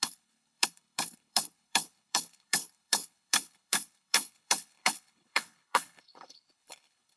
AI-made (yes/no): yes